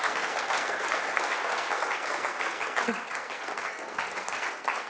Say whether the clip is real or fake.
fake